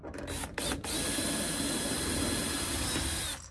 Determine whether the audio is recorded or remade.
recorded